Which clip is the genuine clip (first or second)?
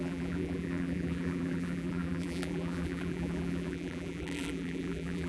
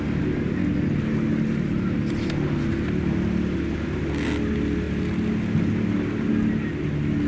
second